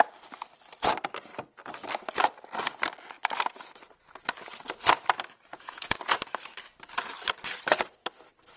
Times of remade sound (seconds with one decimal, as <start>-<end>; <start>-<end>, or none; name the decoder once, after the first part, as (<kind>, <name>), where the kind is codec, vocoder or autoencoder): 5.5-6.0 (vocoder, Vocos)